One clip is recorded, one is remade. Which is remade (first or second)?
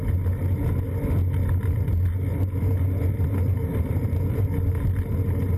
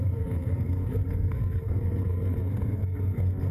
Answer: second